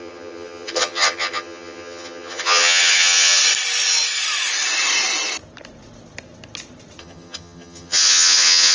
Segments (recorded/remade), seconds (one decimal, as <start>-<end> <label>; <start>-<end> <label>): 0.0-3.4 remade; 3.4-7.0 recorded; 7.0-8.7 remade